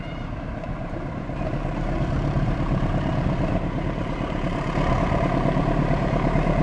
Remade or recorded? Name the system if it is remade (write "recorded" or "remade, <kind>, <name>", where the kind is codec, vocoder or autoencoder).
remade, vocoder, BigVGAN v2